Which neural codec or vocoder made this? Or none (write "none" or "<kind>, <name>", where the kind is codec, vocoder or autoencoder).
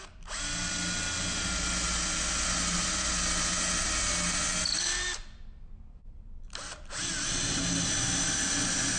none